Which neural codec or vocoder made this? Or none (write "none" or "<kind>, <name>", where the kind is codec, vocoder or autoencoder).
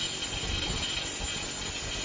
none